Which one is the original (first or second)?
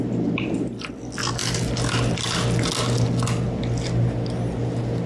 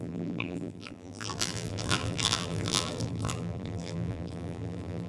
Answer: first